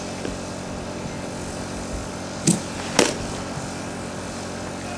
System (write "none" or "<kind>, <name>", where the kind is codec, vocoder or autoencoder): none